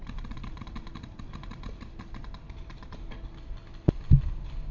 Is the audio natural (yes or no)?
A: yes